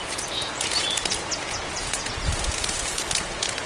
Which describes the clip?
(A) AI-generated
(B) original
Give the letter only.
A